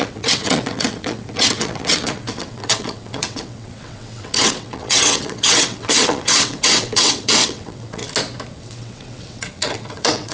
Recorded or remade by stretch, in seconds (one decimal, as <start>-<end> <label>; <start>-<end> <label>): 0.0-8.0 remade; 8.0-8.6 recorded; 8.6-10.3 remade